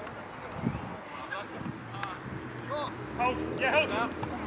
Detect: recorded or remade recorded